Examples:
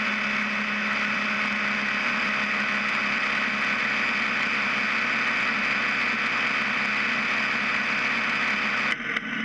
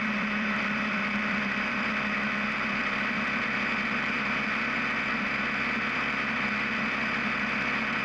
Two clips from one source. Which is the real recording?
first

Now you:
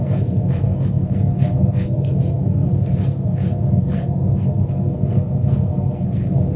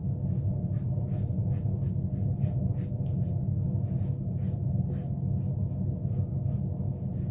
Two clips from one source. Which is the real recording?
second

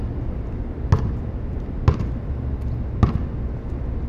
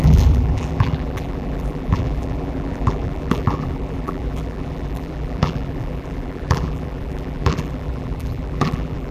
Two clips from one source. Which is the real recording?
first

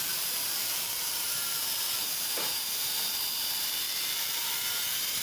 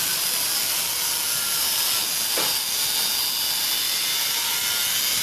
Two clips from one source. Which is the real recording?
second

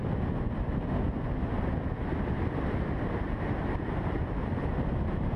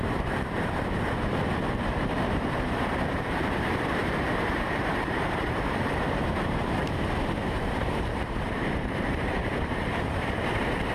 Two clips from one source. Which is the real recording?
first